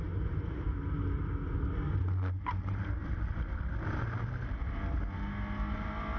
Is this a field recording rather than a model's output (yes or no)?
yes